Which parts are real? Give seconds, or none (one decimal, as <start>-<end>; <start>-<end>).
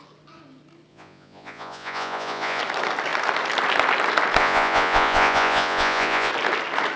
0.0-0.9; 2.6-4.4; 6.3-7.0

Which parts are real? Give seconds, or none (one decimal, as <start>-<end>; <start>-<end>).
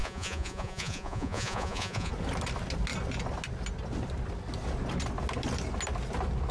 2.1-6.5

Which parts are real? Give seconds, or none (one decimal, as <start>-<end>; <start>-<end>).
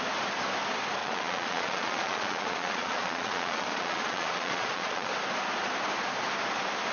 0.0-1.0; 5.1-6.9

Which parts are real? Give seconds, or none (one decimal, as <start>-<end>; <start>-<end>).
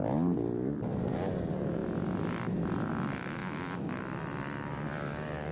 0.0-5.5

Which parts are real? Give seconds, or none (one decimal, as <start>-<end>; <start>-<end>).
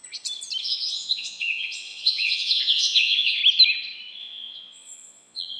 0.0-0.6; 3.4-4.2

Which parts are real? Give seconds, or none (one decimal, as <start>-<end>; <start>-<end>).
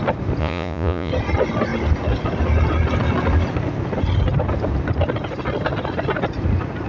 0.0-0.4; 1.1-6.9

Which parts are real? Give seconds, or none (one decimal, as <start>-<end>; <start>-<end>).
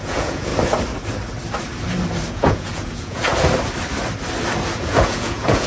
0.5-2.3; 3.2-4.7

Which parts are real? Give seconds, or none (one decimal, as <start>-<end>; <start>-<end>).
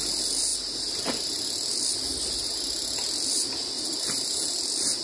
0.0-5.0